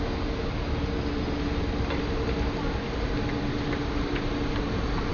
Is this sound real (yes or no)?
yes